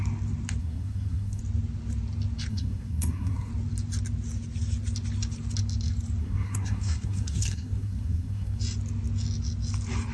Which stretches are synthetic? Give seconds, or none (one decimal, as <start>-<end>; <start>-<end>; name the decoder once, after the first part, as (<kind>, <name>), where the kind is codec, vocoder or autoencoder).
0.6-1.4 (codec, SNAC); 2.5-3.5; 6.2-8.6